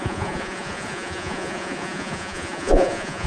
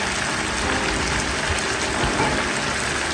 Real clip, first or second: second